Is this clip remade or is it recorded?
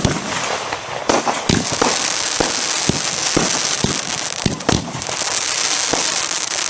recorded